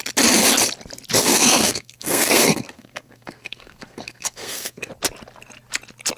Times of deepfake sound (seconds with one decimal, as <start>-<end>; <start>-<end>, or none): 1.2-4.9